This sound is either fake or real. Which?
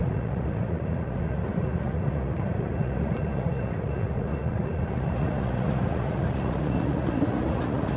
fake